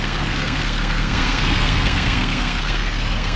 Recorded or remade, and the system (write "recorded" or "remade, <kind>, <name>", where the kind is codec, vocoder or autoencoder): remade, codec, SNAC